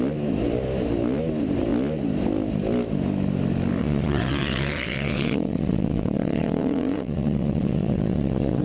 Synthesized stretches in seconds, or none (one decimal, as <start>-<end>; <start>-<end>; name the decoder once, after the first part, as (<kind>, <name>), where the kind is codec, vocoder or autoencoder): 3.8-8.6 (vocoder, WaveNeXt)